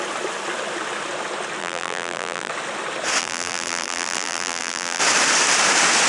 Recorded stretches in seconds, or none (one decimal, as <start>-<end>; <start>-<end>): 0.0-1.6; 2.5-3.2; 5.0-6.1